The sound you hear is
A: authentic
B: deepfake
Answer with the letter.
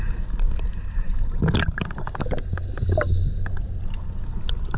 A